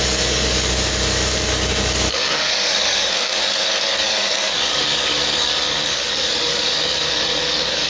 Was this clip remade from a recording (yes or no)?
yes